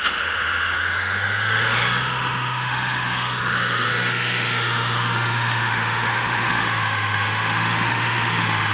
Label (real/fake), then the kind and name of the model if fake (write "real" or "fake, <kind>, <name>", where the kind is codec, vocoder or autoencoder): fake, autoencoder, DAC-VAE